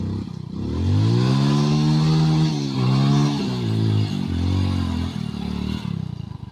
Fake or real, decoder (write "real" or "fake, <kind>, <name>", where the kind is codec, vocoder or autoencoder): real